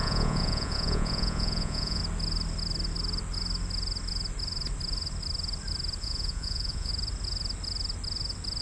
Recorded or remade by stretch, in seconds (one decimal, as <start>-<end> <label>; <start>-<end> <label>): 0.0-2.0 remade; 2.0-6.0 recorded; 6.0-6.9 remade; 6.9-8.6 recorded